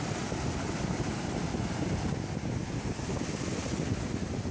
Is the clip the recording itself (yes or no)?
yes